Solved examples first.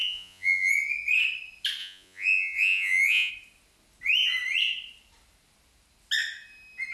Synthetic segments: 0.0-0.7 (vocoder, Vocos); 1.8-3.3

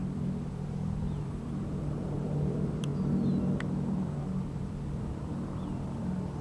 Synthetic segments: 0.0-2.9 (vocoder, BigVGAN v2); 3.6-6.4

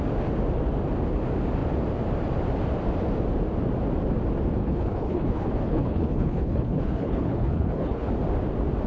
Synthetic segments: 4.6-8.1 (codec, HILCodec)

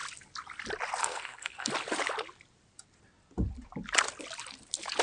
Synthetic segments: 1.0-1.7 (codec, SNAC)

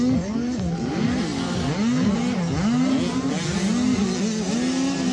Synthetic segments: none

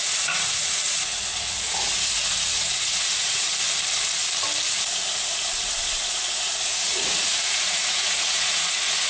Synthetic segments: 0.0-3.5 (vocoder, Vocos); 5.6-9.1

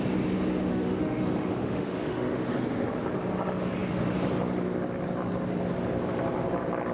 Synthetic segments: 0.7-2.5 (autoencoder, DAC-VAE)